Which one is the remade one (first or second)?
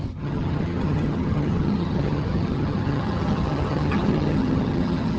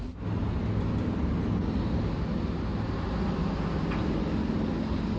first